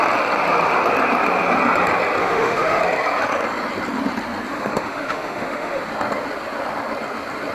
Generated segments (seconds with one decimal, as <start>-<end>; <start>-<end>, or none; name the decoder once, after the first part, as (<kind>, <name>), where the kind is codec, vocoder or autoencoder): 2.2-2.8 (autoencoder, DAC-VAE); 4.5-5.8